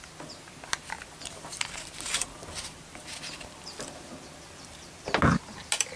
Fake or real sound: real